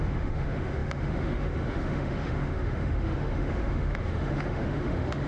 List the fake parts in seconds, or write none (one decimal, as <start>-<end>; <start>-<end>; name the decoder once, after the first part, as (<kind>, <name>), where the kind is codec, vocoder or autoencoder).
0.0-5.3 (autoencoder, DAC-VAE)